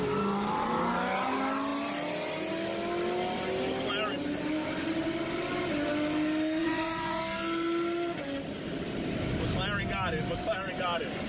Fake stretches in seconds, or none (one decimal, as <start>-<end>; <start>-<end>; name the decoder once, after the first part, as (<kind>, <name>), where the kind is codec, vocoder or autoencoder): 6.6-7.2 (vocoder, Vocos)